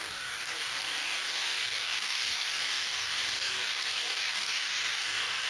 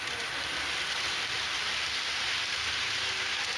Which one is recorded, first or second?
second